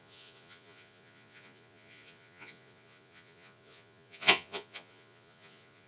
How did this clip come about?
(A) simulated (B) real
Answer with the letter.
A